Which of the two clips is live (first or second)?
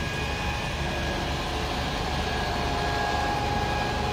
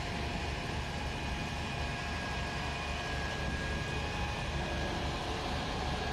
first